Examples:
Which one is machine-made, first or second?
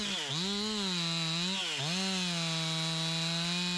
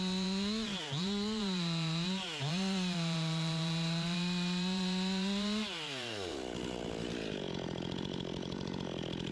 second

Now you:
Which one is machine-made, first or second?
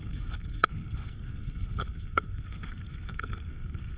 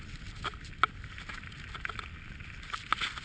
first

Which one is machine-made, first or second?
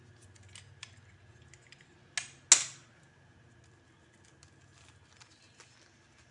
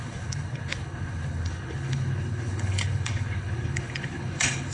second